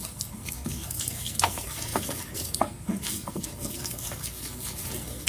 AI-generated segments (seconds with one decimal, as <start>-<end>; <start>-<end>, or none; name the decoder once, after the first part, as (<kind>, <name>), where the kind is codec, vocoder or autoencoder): 0.0-5.3 (codec, SNAC)